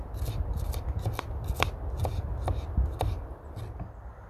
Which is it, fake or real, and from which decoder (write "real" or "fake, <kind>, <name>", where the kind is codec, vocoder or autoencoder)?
real